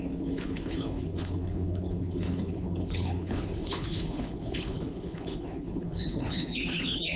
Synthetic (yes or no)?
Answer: yes